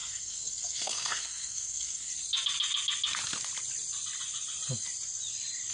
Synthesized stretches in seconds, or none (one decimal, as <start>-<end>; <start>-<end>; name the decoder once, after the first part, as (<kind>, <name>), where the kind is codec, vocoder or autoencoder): 0.0-2.1 (codec, SNAC)